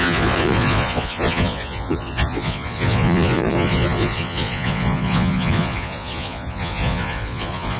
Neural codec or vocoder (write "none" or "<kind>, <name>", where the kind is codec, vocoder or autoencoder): vocoder, Vocos